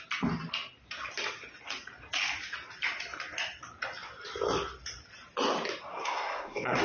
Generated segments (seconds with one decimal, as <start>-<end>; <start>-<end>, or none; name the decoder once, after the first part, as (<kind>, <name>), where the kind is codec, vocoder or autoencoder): 5.9-6.8 (codec, SNAC)

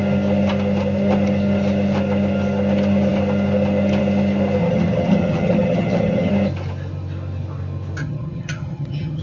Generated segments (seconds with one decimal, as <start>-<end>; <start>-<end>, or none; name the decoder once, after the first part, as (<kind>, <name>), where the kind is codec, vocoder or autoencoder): 4.6-6.3 (vocoder, HiFi-GAN); 8.0-9.2